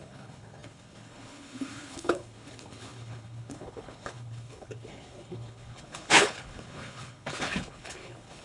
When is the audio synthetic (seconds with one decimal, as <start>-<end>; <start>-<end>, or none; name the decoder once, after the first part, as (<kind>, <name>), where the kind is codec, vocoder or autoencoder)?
0.0-8.4 (codec, HILCodec)

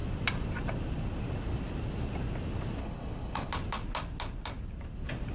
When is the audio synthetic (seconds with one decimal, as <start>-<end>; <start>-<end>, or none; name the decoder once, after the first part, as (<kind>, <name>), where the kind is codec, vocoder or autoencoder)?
2.8-3.5 (codec, HILCodec)